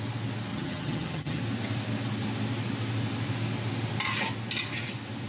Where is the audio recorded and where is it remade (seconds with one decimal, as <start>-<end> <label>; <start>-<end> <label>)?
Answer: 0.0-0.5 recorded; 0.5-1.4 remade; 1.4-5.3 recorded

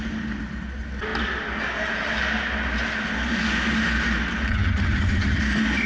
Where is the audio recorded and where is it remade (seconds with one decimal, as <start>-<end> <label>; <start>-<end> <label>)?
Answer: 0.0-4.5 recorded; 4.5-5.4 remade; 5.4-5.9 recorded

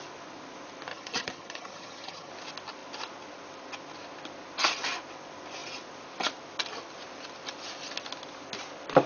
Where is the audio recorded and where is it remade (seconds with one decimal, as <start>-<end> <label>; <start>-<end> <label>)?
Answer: 0.0-0.9 recorded; 0.9-2.3 remade; 2.3-9.1 recorded

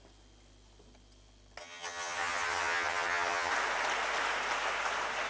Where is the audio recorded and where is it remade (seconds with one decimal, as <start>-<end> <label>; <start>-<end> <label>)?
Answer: 0.0-1.6 recorded; 1.6-3.5 remade; 3.5-5.3 recorded

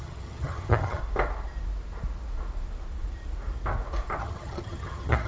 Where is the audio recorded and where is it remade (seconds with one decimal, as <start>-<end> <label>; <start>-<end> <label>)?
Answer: 0.0-1.0 remade; 1.0-4.2 recorded; 4.2-5.3 remade

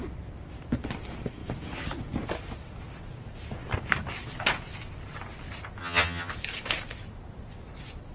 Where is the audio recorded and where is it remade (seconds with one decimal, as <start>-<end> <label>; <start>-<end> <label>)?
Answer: 0.0-5.8 recorded; 5.8-6.3 remade; 6.3-8.1 recorded